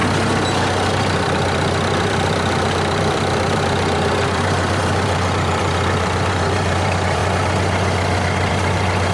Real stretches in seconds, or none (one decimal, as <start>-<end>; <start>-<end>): 0.0-0.9; 7.2-8.5